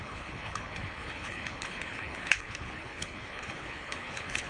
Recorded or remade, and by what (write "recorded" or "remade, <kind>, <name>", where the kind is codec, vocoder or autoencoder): remade, codec, HILCodec